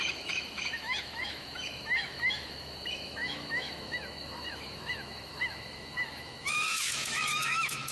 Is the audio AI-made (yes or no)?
yes